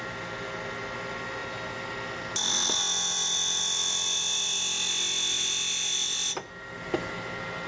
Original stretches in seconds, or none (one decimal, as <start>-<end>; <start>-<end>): 0.0-7.7

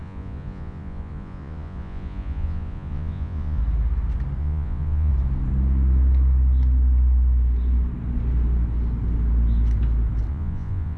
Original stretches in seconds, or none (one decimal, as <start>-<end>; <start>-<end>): 3.6-4.4; 5.1-10.3

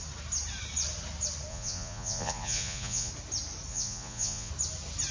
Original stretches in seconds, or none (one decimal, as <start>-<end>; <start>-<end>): 0.0-1.5; 3.1-3.7; 4.5-5.1